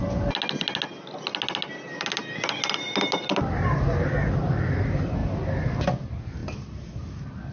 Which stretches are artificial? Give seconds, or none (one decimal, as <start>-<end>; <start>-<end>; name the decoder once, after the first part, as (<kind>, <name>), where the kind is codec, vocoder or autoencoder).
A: none